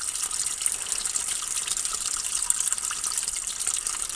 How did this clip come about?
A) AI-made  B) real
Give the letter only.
B